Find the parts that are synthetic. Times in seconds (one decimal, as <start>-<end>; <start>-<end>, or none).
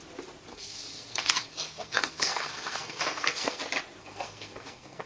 0.5-3.6; 4.0-5.1